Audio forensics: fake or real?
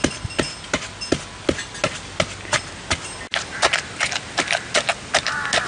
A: real